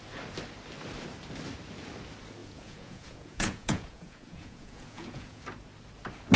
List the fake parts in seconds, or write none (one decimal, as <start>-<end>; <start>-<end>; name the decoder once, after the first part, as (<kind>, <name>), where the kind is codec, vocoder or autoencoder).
2.4-5.4 (vocoder, Vocos)